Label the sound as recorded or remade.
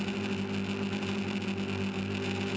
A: recorded